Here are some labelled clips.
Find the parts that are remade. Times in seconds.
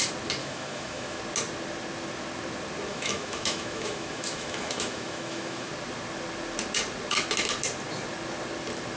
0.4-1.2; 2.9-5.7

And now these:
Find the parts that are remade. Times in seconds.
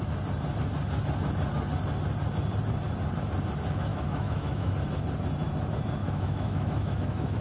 3.9-4.7; 6.0-7.4